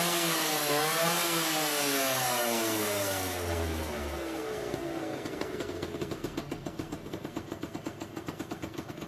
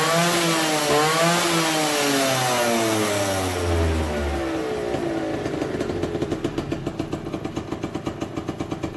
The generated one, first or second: first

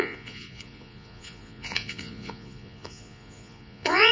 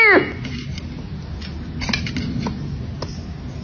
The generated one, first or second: first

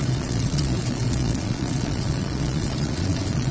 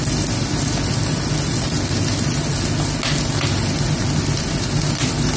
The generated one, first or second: first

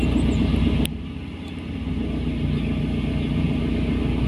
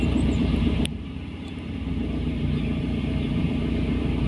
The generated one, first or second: second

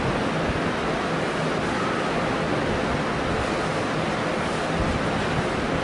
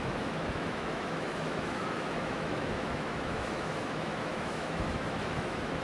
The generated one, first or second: second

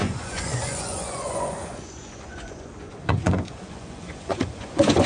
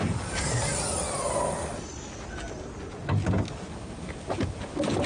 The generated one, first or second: first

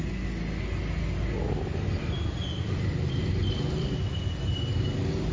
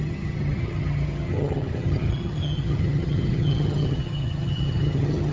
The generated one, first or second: second